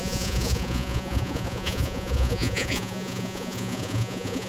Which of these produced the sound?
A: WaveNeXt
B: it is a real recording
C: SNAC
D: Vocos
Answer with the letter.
D